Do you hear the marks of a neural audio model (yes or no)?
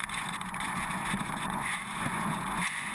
yes